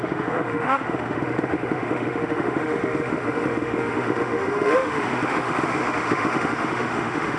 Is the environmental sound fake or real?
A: fake